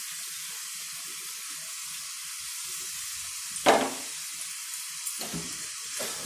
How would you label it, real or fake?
real